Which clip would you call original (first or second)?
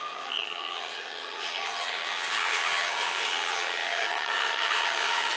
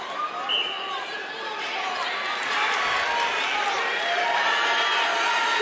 second